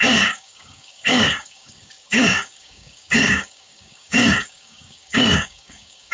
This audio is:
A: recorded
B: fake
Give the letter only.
B